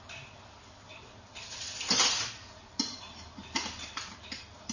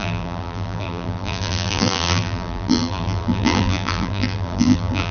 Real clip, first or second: first